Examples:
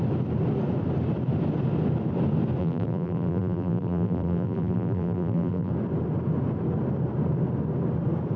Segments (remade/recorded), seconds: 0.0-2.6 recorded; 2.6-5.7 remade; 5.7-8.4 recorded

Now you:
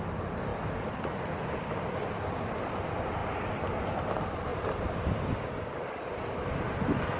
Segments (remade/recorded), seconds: 0.0-3.2 remade; 3.2-3.9 recorded; 3.9-4.5 remade; 4.5-6.2 recorded; 6.2-7.2 remade

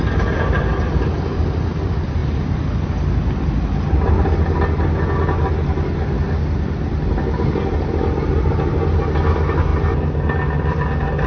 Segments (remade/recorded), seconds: 0.0-11.3 recorded